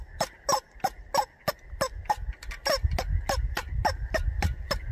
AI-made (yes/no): no